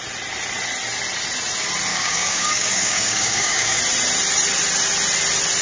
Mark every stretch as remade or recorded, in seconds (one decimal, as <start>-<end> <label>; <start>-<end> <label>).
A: 0.0-1.9 recorded; 1.9-3.8 remade; 3.8-5.6 recorded